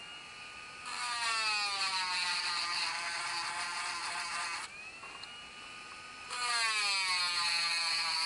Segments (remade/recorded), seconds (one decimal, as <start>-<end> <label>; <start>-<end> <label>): 0.0-2.3 recorded; 2.3-3.2 remade; 3.2-8.3 recorded